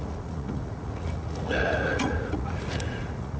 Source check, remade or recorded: remade